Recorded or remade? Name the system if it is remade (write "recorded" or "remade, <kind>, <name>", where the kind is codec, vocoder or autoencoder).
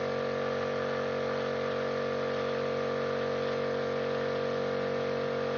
recorded